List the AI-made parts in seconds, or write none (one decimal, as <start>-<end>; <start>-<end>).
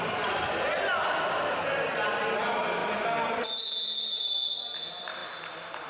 none